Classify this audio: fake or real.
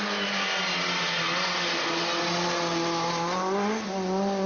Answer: real